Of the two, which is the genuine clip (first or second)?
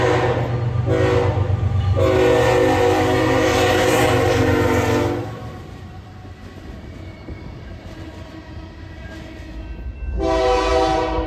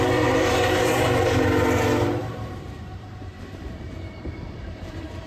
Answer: first